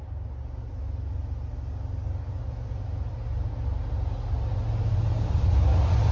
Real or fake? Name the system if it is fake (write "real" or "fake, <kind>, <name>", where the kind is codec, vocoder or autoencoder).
real